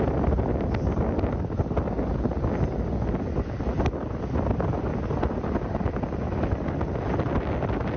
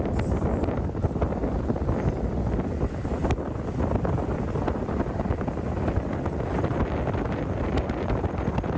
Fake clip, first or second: second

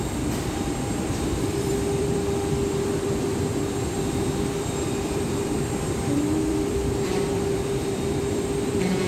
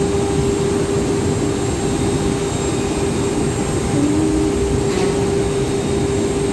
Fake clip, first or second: first